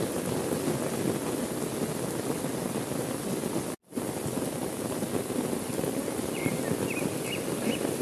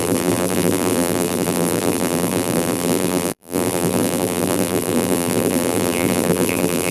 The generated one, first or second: second